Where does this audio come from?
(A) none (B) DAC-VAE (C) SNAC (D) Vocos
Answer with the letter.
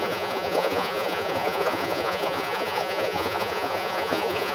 D